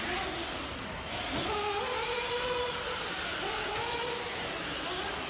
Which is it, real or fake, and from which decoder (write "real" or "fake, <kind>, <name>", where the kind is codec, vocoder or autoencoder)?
real